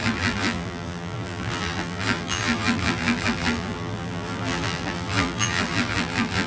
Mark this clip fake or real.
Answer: fake